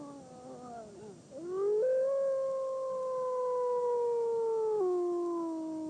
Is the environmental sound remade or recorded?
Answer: recorded